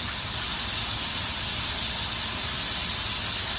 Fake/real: real